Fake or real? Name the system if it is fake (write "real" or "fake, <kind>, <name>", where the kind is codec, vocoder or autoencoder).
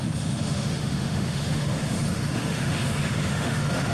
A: fake, autoencoder, DAC-VAE